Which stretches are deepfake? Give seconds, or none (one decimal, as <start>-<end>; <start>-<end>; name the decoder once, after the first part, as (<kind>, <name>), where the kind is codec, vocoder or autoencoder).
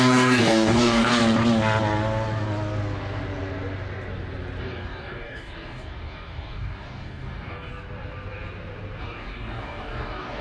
0.0-1.2 (codec, DAC); 4.6-7.7; 9.0-10.4